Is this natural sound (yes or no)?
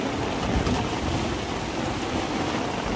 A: yes